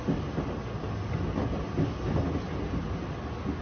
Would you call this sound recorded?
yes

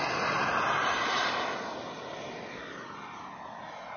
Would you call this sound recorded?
yes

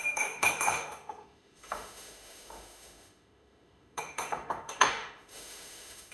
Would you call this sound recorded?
no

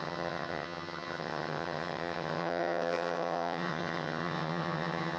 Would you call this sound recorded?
no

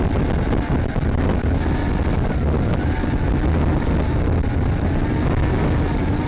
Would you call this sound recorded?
yes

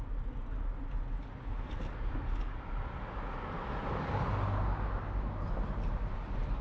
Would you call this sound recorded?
yes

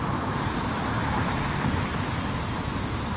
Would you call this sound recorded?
yes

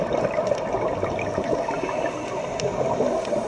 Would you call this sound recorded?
yes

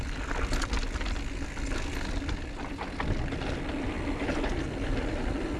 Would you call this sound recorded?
yes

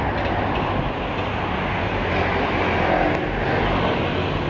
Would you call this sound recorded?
yes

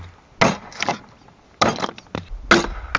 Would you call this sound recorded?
yes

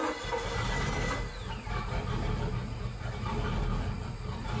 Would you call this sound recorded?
yes